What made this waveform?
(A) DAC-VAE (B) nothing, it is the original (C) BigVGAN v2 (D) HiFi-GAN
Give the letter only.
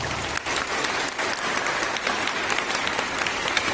B